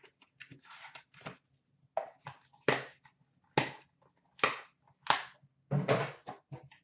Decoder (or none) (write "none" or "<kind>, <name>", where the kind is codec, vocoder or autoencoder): none